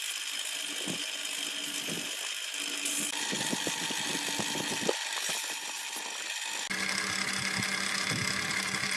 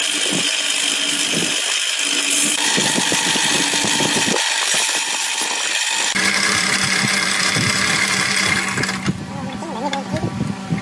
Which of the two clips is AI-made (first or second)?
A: second